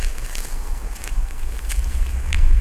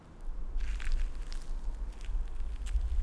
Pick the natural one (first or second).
second